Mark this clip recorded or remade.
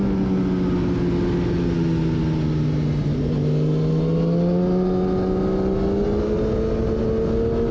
recorded